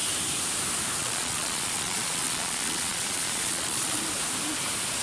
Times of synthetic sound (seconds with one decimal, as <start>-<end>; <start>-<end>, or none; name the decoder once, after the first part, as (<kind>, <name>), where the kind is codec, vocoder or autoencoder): 1.0-4.0 (vocoder, Vocos)